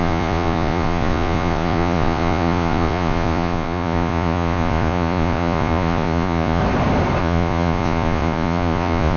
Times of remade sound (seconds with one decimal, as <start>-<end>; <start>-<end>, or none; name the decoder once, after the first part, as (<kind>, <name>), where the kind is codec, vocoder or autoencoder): 0.0-6.6 (vocoder, Vocos); 7.2-9.2